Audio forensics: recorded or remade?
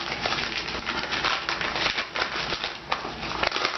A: recorded